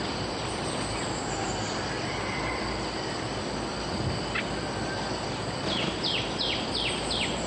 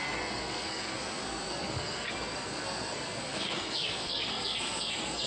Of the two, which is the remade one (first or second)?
second